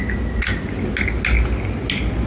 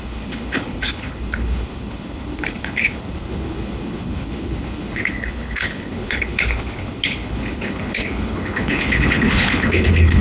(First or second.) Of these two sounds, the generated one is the second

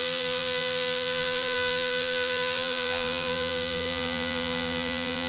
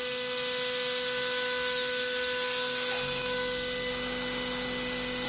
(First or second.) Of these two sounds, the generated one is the first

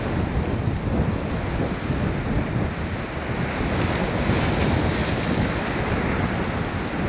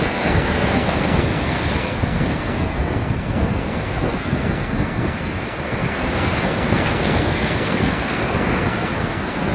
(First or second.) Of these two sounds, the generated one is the second